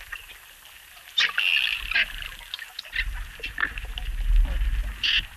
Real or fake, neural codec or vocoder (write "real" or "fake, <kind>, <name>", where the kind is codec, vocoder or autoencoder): real